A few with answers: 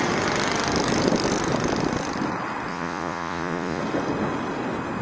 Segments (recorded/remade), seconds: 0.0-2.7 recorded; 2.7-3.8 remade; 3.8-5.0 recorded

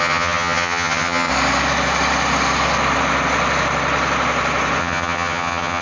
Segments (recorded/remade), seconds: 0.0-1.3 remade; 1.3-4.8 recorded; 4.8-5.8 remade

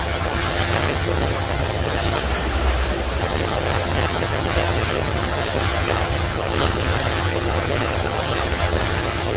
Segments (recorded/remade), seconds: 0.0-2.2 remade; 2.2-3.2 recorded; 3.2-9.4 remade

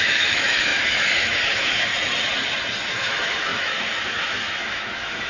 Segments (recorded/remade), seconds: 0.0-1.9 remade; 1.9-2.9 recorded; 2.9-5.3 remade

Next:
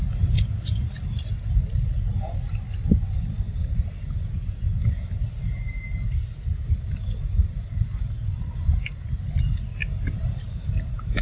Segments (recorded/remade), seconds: 0.0-11.2 recorded